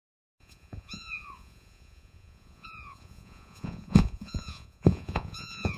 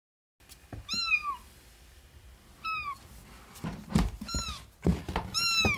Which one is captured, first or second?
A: second